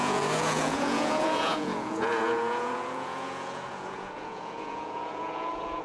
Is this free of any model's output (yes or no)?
no